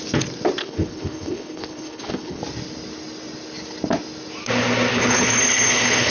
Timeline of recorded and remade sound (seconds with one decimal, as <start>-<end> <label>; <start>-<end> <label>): 0.0-0.6 recorded; 0.6-2.4 remade; 2.4-4.9 recorded; 4.9-6.1 remade